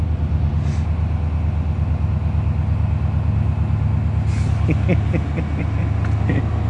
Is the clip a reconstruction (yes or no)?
no